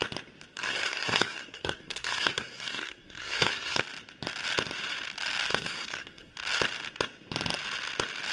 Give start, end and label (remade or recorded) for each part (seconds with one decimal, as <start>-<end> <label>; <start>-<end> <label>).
0.0-0.5 recorded; 0.5-3.8 remade; 3.8-5.5 recorded; 5.5-6.3 remade; 6.3-8.3 recorded

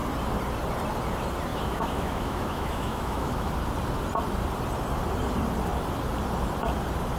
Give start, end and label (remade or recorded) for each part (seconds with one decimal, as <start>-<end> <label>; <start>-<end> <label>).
0.0-1.5 recorded; 1.5-3.5 remade; 3.5-7.2 recorded